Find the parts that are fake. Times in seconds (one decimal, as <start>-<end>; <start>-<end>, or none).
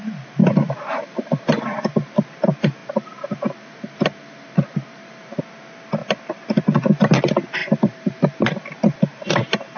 0.4-1.6; 2.8-5.4; 7.6-9.8